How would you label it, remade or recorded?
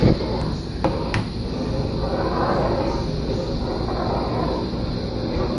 recorded